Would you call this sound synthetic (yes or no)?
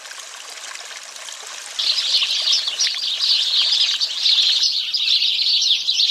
no